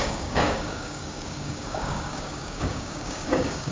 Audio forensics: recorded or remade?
remade